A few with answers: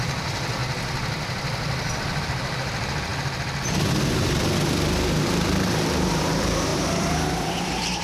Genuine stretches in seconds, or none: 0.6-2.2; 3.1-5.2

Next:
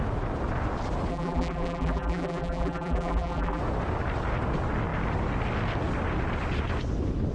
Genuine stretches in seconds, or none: 0.0-1.1; 3.6-7.3

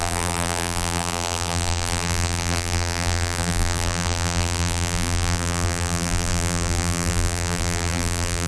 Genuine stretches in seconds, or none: none

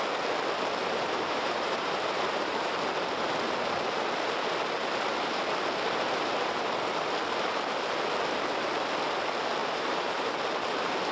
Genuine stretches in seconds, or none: 0.0-0.8; 2.7-9.6; 10.3-11.1

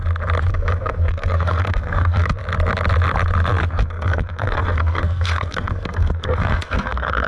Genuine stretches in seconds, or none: 0.0-0.5; 2.4-3.7

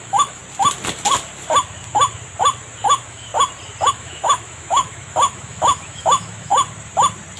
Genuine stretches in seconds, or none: 0.4-2.8; 3.3-3.9; 6.5-7.4